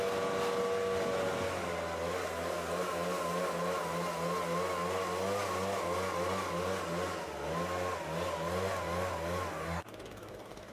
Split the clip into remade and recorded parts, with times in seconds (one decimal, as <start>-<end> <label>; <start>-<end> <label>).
0.0-9.5 recorded; 9.5-10.7 remade